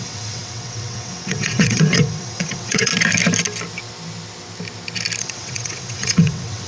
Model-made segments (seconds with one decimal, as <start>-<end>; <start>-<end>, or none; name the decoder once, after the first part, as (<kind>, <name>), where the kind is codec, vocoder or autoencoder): 0.0-2.9 (vocoder, WaveNeXt); 5.2-6.7